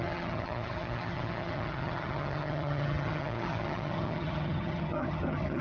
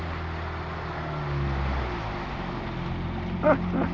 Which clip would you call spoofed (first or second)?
first